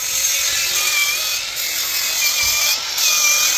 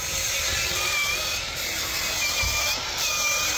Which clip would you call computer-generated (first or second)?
second